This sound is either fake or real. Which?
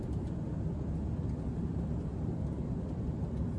real